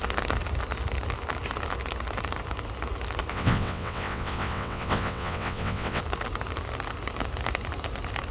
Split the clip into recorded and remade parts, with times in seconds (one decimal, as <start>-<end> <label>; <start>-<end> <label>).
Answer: 0.0-3.3 recorded; 3.3-6.0 remade; 6.0-8.3 recorded

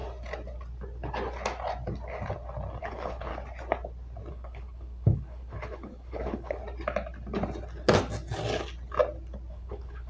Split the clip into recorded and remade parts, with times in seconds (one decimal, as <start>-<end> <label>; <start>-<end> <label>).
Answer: 0.0-2.8 recorded; 2.8-3.3 remade; 3.3-4.3 recorded; 4.3-6.6 remade; 6.6-9.5 recorded; 9.5-10.1 remade

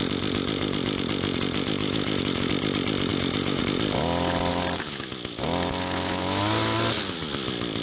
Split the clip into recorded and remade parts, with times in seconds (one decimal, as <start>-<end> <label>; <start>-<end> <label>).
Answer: 0.0-1.8 recorded; 1.8-2.5 remade; 2.5-3.1 recorded; 3.1-3.6 remade; 3.6-4.5 recorded; 4.5-6.4 remade; 6.4-7.8 recorded

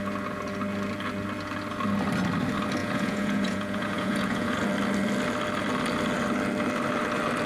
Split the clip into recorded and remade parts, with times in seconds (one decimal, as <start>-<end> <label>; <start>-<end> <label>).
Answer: 0.0-2.8 recorded; 2.8-4.6 remade; 4.6-7.5 recorded

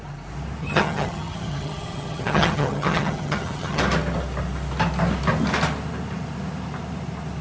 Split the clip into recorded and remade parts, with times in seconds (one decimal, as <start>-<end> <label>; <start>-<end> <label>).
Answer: 0.0-0.6 recorded; 0.6-3.8 remade; 3.8-7.4 recorded

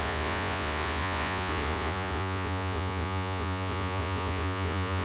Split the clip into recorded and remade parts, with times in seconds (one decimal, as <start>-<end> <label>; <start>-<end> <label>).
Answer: 0.0-5.0 remade

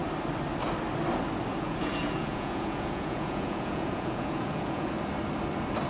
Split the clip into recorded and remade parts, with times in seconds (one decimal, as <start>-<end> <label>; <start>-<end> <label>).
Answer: 0.0-1.5 recorded; 1.5-4.9 remade; 4.9-5.9 recorded